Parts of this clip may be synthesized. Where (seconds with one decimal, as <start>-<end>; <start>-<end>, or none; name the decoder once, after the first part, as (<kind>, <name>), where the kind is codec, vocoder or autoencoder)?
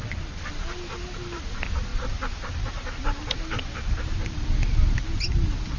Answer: none